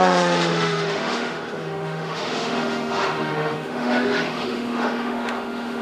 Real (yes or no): no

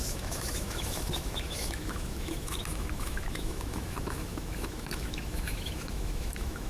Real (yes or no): no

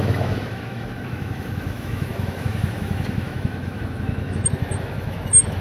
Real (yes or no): no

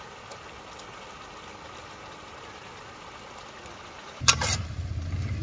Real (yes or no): yes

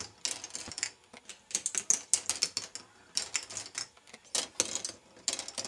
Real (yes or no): yes